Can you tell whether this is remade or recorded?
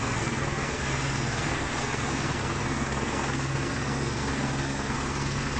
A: remade